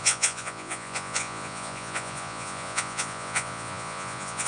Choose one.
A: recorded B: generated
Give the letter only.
B